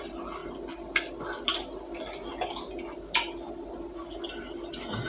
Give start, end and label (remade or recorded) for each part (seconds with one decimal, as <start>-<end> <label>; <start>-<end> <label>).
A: 0.0-5.1 recorded